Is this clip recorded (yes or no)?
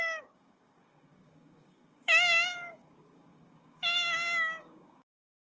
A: no